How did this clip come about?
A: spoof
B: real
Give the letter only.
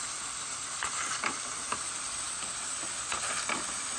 B